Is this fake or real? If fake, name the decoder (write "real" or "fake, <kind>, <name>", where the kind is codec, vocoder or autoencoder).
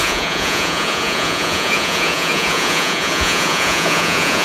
fake, vocoder, Vocos